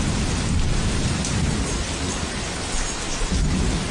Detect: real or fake real